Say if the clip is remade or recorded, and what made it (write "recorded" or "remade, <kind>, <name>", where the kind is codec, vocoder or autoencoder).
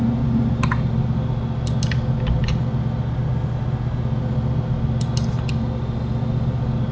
recorded